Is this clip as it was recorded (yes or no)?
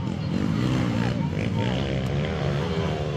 yes